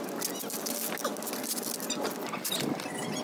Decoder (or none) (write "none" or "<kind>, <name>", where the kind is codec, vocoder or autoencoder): none